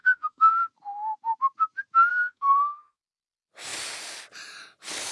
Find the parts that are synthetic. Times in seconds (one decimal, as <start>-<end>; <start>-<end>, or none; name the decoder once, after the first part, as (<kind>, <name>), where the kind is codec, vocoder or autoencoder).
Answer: 0.0-0.5 (codec, SNAC); 2.1-3.0